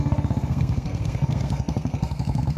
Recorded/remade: remade